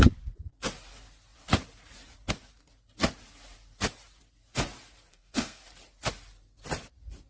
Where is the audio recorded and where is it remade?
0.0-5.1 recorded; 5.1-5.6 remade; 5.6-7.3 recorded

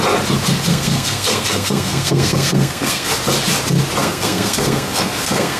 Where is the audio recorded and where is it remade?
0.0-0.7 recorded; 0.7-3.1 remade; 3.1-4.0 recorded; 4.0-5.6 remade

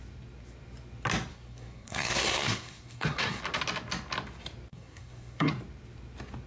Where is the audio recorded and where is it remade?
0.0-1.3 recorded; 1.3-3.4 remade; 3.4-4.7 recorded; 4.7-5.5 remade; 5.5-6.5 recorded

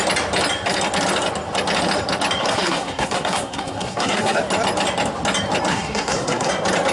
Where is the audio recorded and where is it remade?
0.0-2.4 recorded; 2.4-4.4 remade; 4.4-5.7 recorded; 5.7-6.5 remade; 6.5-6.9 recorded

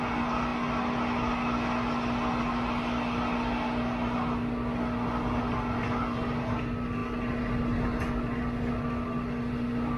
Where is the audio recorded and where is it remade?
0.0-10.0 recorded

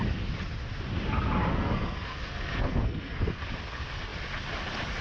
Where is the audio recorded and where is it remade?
0.0-1.5 recorded; 1.5-3.4 remade; 3.4-5.0 recorded